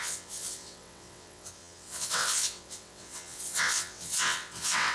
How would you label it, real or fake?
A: fake